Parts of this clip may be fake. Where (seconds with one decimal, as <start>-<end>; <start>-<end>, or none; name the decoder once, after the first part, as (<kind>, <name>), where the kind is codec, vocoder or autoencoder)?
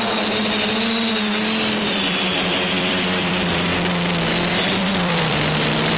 0.0-0.4 (vocoder, BigVGAN v2); 1.8-3.7; 4.5-6.0